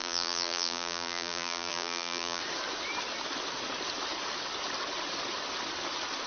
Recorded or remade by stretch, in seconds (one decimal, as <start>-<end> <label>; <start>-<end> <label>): 0.0-2.4 remade; 2.4-6.3 recorded